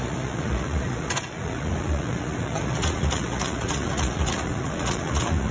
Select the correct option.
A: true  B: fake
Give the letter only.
B